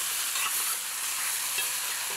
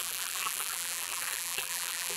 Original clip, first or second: first